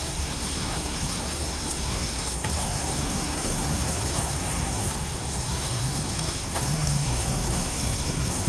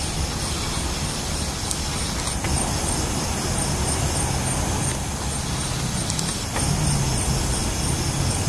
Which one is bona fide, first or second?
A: second